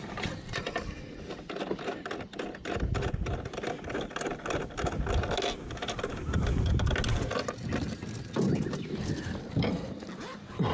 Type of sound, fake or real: real